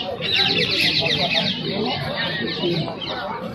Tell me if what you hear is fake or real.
real